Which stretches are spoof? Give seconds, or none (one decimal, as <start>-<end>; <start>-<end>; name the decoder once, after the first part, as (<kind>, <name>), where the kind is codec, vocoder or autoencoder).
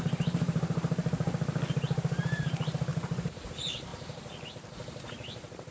0.0-1.0 (vocoder, BigVGAN v2); 2.2-5.7